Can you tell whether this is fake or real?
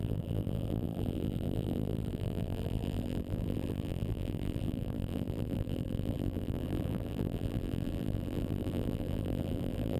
fake